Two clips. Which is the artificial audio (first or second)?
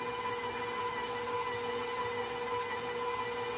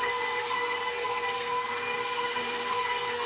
second